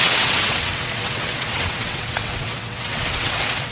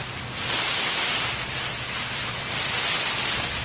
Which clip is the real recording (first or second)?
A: second